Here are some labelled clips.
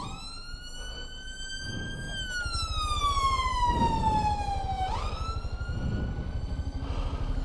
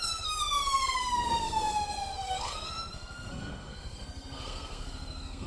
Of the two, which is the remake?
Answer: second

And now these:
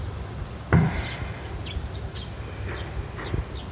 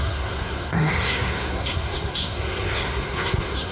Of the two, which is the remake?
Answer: second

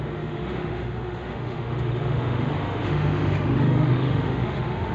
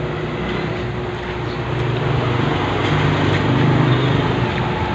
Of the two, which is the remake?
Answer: first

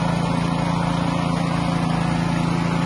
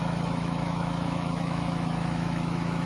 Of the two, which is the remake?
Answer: second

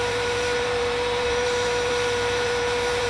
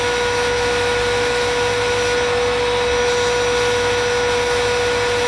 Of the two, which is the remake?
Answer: first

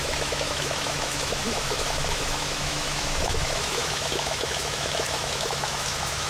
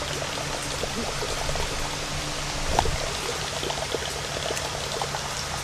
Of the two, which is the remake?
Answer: first